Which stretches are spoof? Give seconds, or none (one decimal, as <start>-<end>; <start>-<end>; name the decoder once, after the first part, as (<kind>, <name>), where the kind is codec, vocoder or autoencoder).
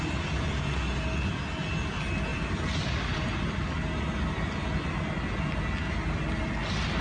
none